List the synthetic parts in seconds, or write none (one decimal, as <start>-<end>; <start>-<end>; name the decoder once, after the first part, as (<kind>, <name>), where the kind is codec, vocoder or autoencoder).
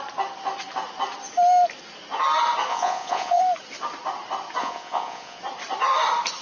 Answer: 2.7-3.4 (vocoder, Vocos); 4.6-5.4